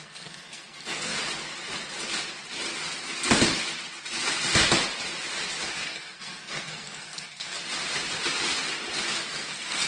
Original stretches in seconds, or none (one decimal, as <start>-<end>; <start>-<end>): 1.1-5.7; 7.6-9.3